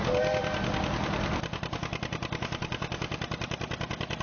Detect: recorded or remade recorded